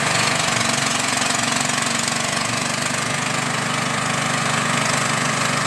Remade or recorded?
remade